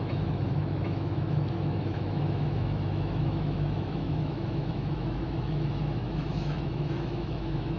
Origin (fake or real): fake